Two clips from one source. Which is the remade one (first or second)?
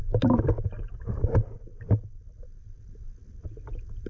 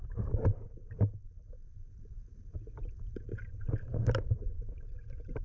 second